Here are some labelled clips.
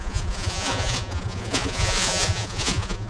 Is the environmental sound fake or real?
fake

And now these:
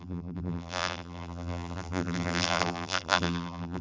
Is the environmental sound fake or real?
fake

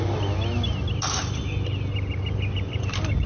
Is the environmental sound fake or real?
real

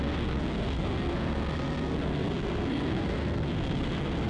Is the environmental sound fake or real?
fake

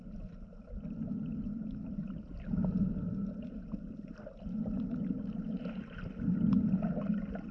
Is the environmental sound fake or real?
real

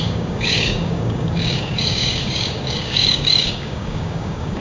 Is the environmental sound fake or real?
fake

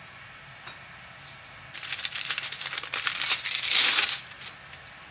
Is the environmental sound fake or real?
real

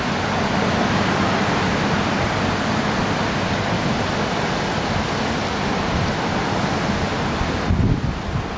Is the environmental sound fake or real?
real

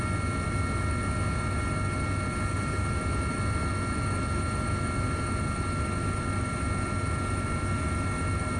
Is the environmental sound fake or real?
real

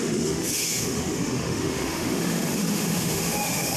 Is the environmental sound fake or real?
fake